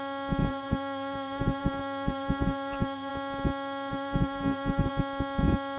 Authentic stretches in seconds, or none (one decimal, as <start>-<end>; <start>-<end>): 0.0-0.5; 3.1-3.9; 4.9-5.8

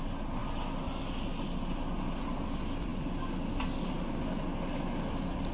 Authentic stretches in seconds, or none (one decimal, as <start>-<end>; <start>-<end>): 0.0-5.5

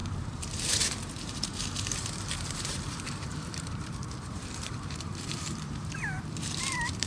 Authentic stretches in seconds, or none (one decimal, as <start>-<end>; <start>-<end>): none

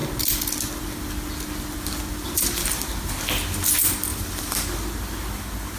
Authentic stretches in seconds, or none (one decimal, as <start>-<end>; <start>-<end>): 0.0-4.1; 4.7-5.8